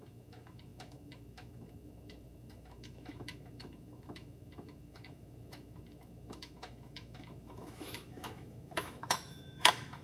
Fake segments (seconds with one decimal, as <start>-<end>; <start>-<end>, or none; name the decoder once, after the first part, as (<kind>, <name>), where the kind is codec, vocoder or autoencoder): 0.0-10.0 (autoencoder, DAC-VAE)